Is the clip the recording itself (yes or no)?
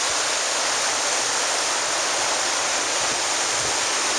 yes